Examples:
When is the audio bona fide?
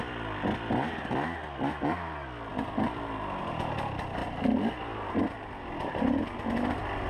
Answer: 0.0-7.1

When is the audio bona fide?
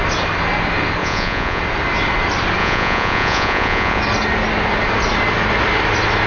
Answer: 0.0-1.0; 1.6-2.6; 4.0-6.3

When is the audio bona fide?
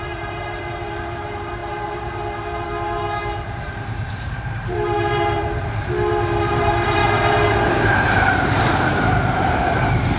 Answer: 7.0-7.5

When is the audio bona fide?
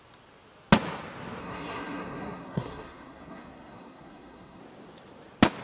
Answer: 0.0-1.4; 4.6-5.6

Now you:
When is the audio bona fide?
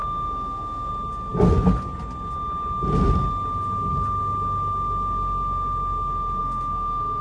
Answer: 0.9-6.4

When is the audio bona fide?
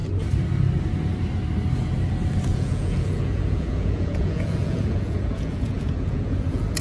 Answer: 0.0-2.5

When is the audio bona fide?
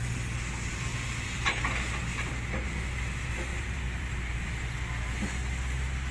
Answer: 0.0-0.9; 1.6-3.5; 4.5-6.1